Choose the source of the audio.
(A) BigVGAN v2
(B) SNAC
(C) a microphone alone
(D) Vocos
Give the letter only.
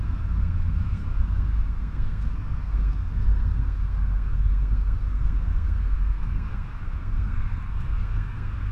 B